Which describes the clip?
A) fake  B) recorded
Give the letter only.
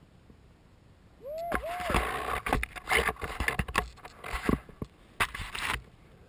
B